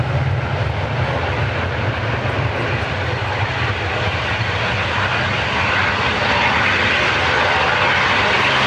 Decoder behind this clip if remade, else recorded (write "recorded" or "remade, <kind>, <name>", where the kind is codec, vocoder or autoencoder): recorded